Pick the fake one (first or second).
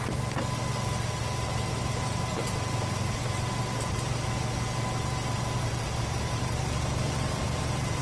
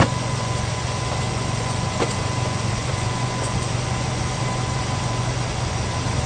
second